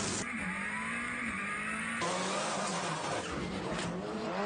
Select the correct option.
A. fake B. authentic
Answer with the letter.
B